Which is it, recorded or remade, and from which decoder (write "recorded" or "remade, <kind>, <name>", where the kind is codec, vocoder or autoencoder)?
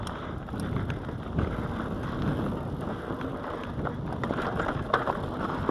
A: recorded